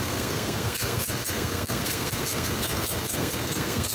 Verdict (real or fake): fake